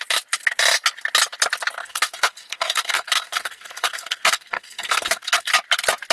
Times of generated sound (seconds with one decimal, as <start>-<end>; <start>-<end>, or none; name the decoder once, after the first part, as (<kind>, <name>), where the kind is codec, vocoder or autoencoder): 1.8-5.5 (codec, SNAC)

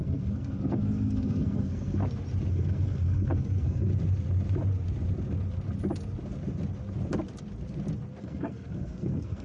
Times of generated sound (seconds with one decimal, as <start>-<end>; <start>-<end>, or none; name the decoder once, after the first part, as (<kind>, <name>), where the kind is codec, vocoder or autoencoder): 0.0-2.0 (codec, SNAC); 2.5-3.9; 8.2-9.4

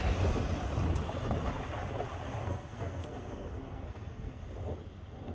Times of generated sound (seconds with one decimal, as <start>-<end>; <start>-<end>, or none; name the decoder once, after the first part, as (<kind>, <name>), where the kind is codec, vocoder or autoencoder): 2.4-4.4 (codec, SNAC)

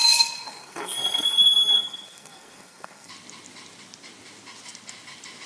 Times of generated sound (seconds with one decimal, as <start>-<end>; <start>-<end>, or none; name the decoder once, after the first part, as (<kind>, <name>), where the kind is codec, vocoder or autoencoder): 0.0-3.1 (codec, SNAC)

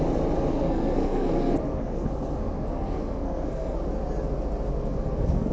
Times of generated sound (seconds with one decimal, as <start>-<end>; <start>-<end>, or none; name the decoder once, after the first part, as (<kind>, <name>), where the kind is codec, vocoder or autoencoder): 0.5-3.8 (codec, SNAC); 4.7-5.5

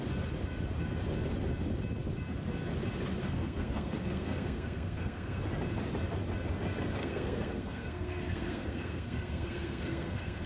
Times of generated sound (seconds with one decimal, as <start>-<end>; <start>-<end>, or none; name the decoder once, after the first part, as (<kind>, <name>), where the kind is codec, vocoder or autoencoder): 3.2-5.4 (codec, SNAC); 7.0-10.5

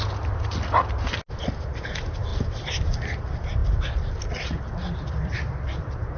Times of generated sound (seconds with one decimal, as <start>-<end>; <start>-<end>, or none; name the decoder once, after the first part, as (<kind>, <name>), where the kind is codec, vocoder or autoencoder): none

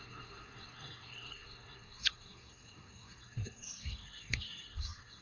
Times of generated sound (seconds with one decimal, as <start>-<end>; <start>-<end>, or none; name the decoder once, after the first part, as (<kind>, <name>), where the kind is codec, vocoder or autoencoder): 0.0-5.2 (codec, SNAC)